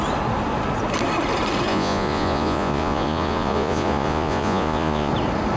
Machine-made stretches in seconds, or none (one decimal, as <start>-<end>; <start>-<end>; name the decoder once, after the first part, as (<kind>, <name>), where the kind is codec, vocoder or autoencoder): 1.7-5.1 (vocoder, Vocos)